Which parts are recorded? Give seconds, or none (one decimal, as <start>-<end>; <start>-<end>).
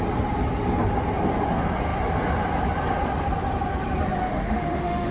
0.0-4.2